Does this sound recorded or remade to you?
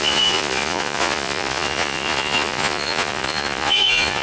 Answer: remade